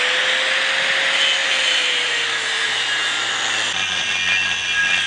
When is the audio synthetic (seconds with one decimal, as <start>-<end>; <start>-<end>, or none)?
1.4-3.3